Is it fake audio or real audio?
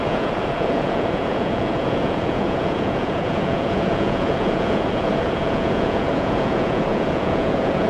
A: fake